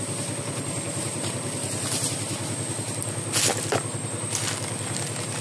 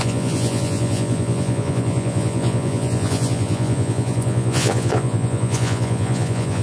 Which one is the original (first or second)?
first